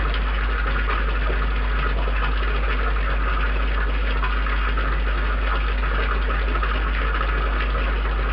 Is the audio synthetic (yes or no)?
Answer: no